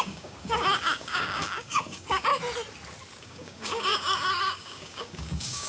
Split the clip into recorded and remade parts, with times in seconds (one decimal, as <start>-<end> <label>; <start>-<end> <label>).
0.0-2.3 remade; 2.3-3.2 recorded; 3.2-5.7 remade